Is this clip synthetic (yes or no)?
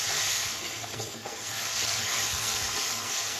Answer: yes